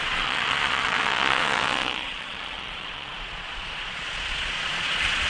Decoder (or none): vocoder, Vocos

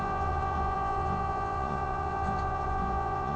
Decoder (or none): vocoder, Vocos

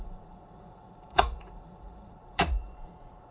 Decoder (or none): vocoder, Vocos